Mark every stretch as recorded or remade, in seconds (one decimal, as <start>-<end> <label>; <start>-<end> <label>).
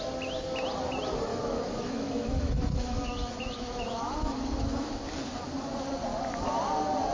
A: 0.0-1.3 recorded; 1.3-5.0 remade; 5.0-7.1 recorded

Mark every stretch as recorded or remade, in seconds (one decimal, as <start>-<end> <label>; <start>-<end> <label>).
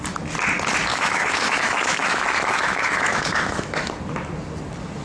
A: 0.0-0.9 recorded; 0.9-3.9 remade; 3.9-5.0 recorded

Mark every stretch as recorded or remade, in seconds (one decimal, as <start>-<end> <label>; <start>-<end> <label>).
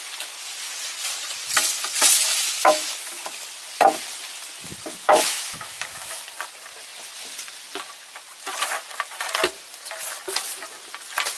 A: 0.0-2.6 recorded; 2.6-3.2 remade; 3.2-5.0 recorded; 5.0-6.2 remade; 6.2-11.4 recorded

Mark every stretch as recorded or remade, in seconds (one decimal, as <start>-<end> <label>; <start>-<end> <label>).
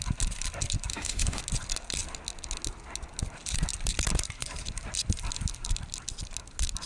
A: 0.0-0.9 recorded; 0.9-1.4 remade; 1.4-6.9 recorded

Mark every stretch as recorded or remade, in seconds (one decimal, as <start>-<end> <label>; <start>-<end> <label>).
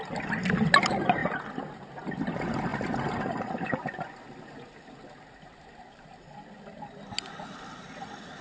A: 0.0-8.4 recorded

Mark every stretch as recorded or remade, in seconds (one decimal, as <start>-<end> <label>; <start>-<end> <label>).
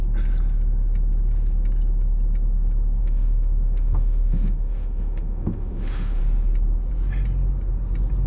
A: 0.0-3.0 recorded; 3.0-6.2 remade; 6.2-8.3 recorded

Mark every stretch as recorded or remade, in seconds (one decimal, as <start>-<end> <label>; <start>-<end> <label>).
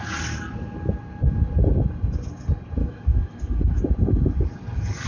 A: 0.0-2.8 recorded; 2.8-3.8 remade; 3.8-5.1 recorded